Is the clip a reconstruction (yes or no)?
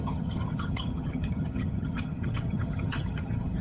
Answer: yes